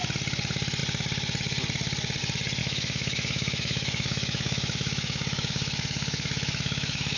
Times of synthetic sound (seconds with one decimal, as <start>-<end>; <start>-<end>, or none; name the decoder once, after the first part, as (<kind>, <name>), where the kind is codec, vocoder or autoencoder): 2.6-7.2 (autoencoder, DAC-VAE)